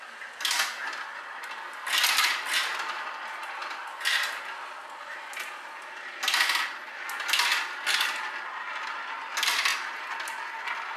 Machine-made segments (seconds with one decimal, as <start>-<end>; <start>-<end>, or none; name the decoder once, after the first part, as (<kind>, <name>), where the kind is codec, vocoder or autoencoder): none

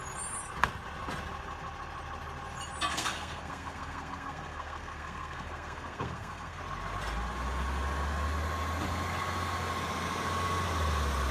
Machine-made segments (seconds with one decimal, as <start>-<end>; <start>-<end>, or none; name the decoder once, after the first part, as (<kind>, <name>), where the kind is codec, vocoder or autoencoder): 2.9-6.6 (codec, SNAC)

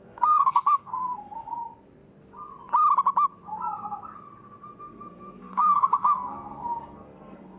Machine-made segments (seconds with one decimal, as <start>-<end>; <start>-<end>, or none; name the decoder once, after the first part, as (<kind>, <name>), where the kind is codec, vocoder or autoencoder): 0.0-1.6 (codec, SNAC); 4.8-7.6

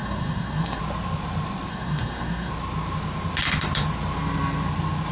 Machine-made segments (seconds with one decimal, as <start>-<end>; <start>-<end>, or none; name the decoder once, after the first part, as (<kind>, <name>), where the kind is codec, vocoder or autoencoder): 0.0-0.8 (codec, SNAC); 1.7-2.5

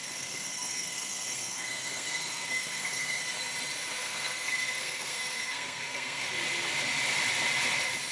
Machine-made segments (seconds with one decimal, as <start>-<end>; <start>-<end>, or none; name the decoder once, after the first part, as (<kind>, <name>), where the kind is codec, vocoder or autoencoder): 0.0-3.2 (codec, SNAC); 4.0-6.4

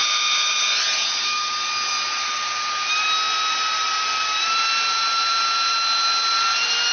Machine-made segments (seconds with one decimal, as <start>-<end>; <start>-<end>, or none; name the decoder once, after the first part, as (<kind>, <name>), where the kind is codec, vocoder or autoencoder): none

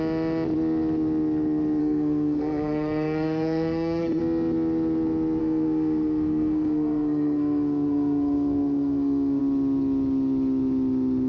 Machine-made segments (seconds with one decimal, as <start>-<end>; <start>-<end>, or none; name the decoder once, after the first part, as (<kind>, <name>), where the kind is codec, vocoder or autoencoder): 1.8-4.2 (codec, SNAC); 5.4-9.4

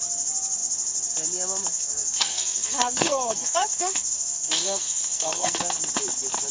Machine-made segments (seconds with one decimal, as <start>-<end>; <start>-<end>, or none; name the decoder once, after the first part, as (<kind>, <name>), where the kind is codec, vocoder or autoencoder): 1.7-5.6 (codec, SNAC)